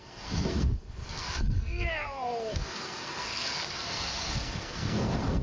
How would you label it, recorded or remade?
remade